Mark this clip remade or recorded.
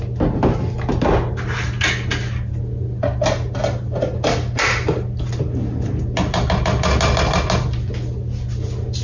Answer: recorded